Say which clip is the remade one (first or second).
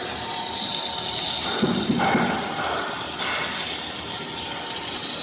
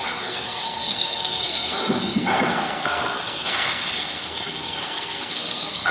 second